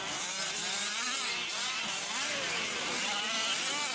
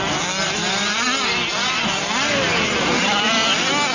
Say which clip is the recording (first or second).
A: second